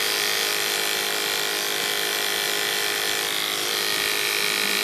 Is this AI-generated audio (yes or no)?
yes